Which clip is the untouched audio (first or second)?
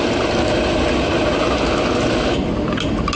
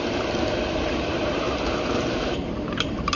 first